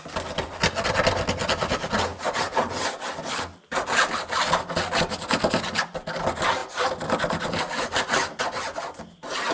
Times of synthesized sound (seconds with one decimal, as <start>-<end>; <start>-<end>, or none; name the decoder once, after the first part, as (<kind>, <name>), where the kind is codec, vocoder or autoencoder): none